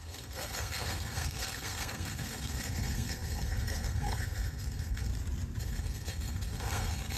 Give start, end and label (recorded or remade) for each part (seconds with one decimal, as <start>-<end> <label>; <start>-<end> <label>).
0.0-5.1 remade; 5.1-5.6 recorded; 5.6-7.2 remade